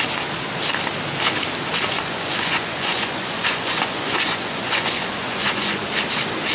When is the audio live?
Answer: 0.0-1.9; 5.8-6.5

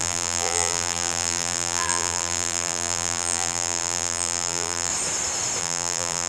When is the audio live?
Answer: 4.9-5.6

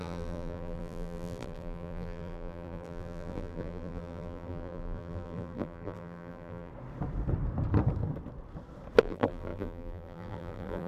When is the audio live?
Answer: 6.7-9.0

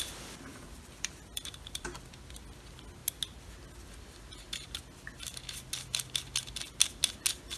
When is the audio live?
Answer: 0.0-0.5; 2.0-7.6

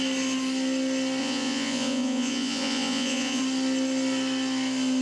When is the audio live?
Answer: 0.0-1.2; 3.4-5.0

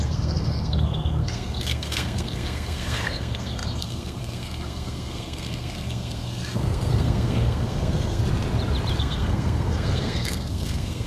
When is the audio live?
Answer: 8.2-9.0

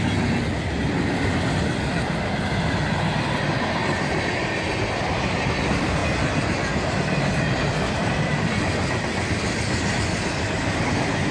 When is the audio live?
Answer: 0.0-11.3